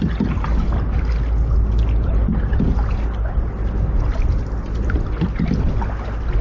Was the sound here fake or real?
real